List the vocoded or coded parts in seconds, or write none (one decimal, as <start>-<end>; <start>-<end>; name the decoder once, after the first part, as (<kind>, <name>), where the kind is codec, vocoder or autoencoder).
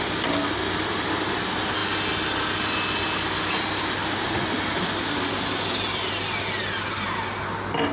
none